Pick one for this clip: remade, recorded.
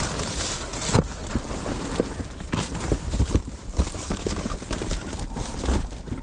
recorded